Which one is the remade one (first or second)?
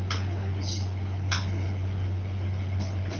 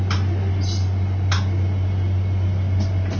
first